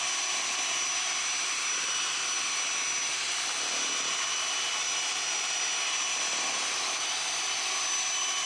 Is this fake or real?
real